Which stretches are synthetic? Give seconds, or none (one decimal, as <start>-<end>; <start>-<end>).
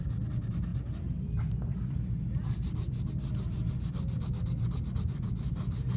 none